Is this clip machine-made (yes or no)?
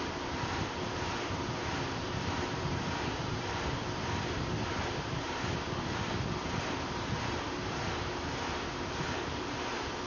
yes